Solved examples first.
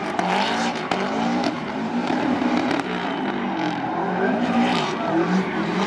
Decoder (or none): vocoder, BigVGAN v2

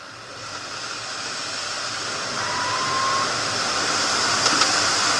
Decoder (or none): none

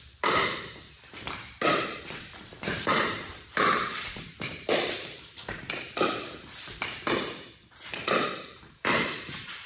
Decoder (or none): vocoder, BigVGAN v2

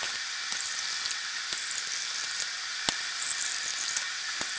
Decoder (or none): none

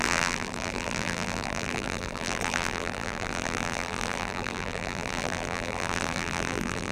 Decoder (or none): vocoder, BigVGAN v2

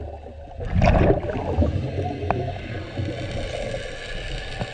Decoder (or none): none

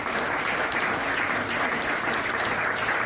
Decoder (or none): none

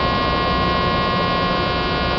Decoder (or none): none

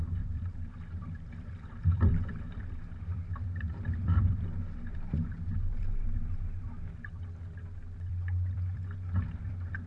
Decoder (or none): vocoder, BigVGAN v2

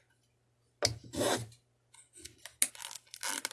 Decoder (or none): none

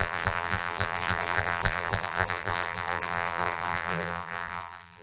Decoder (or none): vocoder, BigVGAN v2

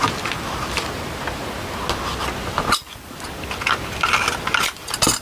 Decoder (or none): none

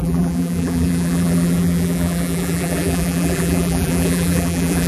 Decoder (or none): vocoder, BigVGAN v2